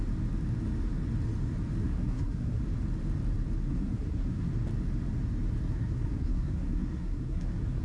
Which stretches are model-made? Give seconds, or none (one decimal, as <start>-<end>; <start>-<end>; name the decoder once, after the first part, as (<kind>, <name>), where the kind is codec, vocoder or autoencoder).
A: 1.8-2.6 (codec, SNAC); 3.7-4.5; 5.6-7.8